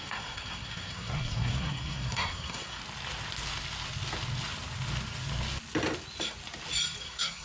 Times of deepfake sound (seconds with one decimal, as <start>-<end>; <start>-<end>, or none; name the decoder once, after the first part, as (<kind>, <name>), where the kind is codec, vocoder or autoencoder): 0.0-2.8 (codec, SNAC); 7.0-7.4